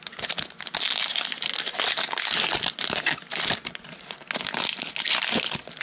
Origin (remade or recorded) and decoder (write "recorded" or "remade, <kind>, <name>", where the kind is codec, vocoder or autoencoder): recorded